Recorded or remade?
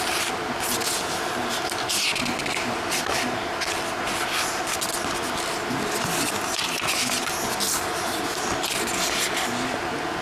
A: recorded